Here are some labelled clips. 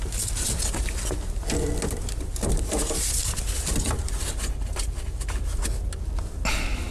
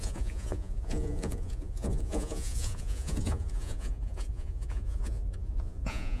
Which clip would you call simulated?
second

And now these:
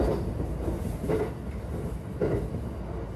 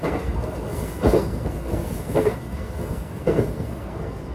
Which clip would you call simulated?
second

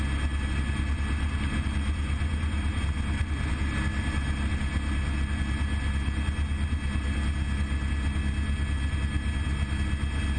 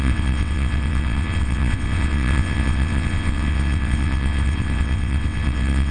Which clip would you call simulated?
second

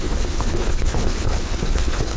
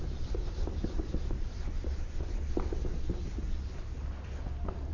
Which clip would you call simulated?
first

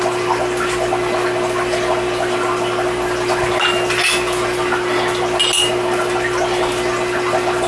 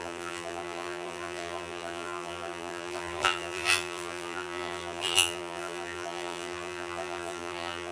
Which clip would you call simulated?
second